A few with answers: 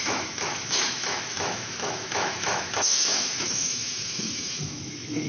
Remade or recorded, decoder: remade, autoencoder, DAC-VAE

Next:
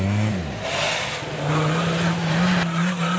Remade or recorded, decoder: recorded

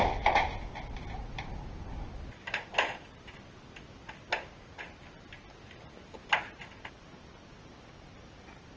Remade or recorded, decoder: recorded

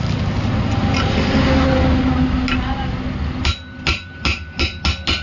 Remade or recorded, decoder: recorded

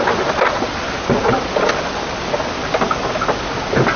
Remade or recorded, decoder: recorded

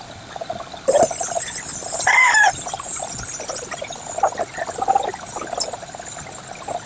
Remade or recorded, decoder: recorded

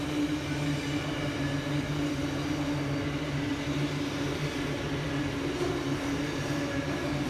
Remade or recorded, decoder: recorded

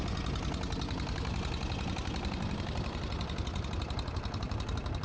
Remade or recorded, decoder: recorded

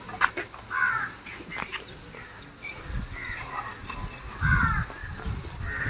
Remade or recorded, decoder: recorded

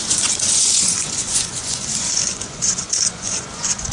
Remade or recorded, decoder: remade, vocoder, Vocos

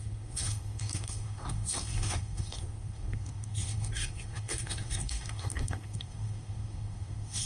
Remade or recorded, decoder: remade, codec, SNAC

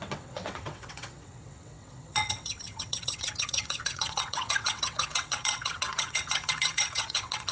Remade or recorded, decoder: remade, vocoder, WaveNeXt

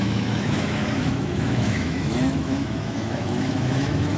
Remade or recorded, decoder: remade, autoencoder, DAC-VAE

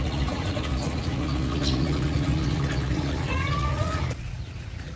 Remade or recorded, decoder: remade, vocoder, Vocos